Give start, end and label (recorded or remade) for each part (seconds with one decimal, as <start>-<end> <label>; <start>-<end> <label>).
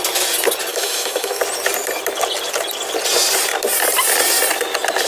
0.0-0.7 recorded; 0.7-1.4 remade; 1.4-5.1 recorded